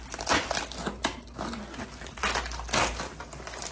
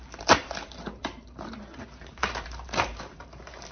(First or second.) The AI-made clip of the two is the second